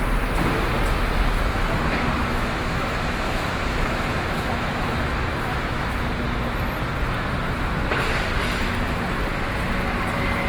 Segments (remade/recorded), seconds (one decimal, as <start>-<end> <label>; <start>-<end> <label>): 0.0-2.2 recorded; 2.2-6.1 remade; 6.1-10.5 recorded